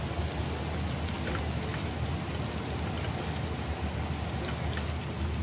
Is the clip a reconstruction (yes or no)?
no